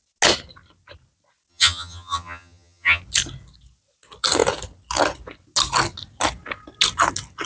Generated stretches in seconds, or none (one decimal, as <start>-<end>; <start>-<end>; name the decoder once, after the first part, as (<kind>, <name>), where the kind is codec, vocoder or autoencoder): 1.5-3.0 (vocoder, HiFi-GAN)